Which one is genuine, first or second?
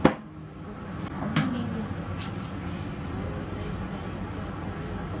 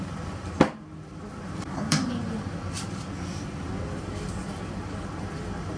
first